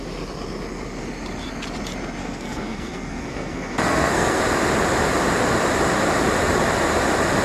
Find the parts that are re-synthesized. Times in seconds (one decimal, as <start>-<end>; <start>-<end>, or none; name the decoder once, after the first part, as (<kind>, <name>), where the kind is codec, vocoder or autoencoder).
2.2-4.4 (codec, SNAC)